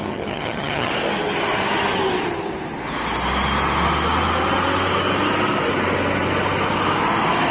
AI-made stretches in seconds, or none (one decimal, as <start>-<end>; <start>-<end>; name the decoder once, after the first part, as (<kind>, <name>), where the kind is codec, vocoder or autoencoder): 0.0-0.9 (vocoder, HiFi-GAN)